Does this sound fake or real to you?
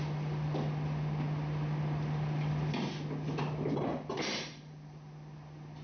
real